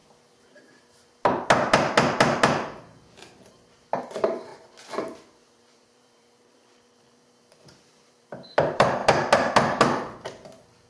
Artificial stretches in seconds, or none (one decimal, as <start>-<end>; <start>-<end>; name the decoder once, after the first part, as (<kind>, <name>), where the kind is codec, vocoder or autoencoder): 4.0-4.5 (vocoder, BigVGAN v2); 5.5-9.0